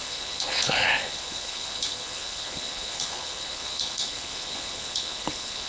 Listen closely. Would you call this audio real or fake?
fake